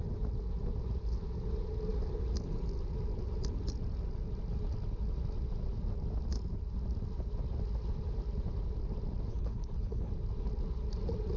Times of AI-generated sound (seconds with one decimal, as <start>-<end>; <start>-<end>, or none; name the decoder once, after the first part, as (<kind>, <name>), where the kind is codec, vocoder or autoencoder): 9.3-10.1 (codec, HILCodec)